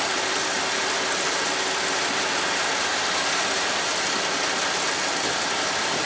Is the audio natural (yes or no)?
yes